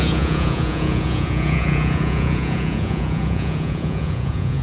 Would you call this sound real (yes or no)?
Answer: no